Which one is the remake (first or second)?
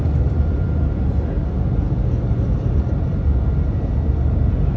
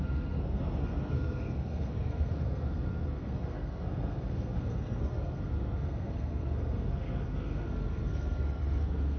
second